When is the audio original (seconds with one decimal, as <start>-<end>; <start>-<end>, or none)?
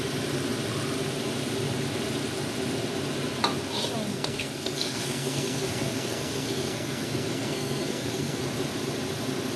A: 0.0-4.1; 8.4-9.6